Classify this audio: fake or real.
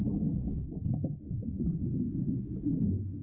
real